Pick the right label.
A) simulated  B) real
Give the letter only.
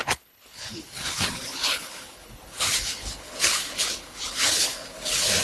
A